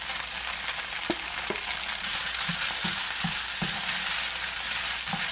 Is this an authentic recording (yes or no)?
yes